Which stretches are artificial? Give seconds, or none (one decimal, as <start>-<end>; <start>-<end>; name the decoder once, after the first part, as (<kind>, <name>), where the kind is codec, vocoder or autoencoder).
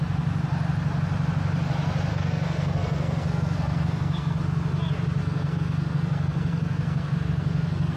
2.1-4.4 (codec, SNAC); 5.2-8.0